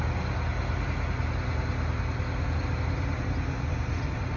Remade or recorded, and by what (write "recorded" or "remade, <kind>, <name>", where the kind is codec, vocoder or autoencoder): recorded